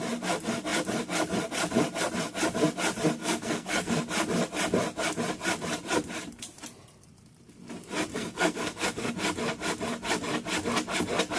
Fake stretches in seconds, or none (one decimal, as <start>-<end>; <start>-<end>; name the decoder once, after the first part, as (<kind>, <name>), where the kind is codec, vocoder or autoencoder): 3.2-4.0 (codec, SNAC); 8.1-9.1